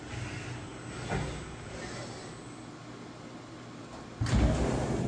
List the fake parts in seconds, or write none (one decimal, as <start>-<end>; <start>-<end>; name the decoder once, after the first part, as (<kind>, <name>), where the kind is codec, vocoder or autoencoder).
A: none

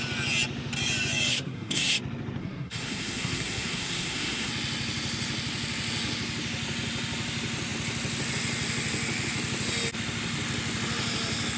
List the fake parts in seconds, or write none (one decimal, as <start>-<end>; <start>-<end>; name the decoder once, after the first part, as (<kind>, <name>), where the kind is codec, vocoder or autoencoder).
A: 1.3-2.0 (codec, SNAC); 2.4-4.5